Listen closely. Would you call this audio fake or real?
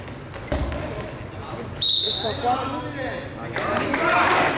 real